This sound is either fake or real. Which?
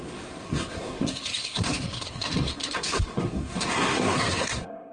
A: fake